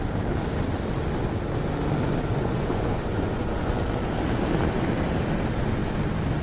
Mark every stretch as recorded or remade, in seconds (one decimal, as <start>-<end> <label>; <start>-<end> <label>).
0.0-2.3 recorded; 2.3-3.8 remade; 3.8-6.4 recorded